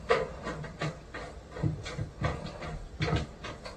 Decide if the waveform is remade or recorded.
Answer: recorded